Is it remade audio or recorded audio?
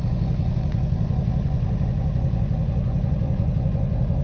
remade